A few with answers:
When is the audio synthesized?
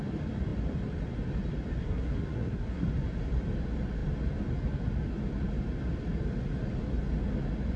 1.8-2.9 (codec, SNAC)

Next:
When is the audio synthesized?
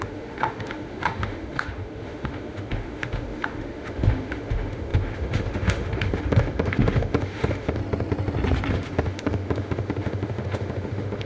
0.0-7.8 (autoencoder, DAC-VAE); 8.7-11.3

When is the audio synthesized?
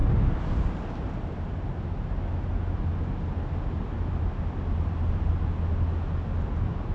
none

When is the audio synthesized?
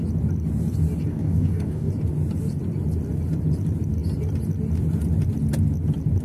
1.1-1.9 (codec, DAC)